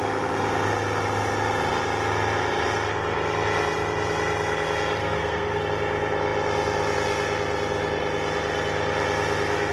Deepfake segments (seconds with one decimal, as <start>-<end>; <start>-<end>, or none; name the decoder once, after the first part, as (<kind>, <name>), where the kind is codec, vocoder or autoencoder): 5.0-5.6 (codec, SNAC)